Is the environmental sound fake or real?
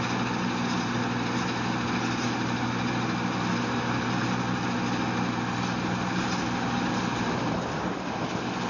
real